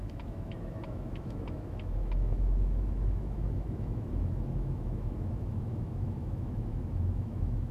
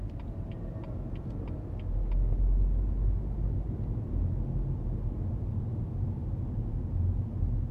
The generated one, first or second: first